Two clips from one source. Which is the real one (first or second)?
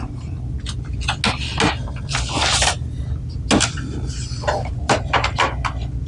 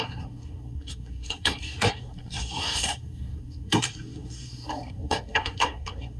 first